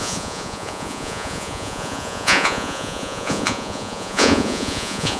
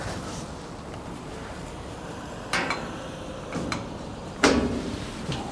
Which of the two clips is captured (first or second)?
second